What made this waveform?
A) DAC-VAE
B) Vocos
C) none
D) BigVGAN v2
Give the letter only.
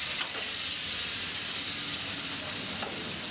C